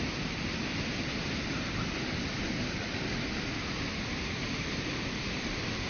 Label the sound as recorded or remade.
remade